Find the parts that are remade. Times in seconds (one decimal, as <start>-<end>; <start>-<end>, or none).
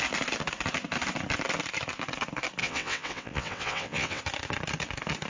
2.6-4.2